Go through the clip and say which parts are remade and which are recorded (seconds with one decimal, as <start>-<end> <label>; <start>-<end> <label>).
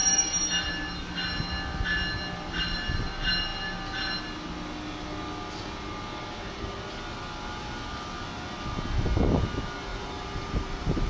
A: 0.0-0.7 remade; 0.7-9.9 recorded; 9.9-11.1 remade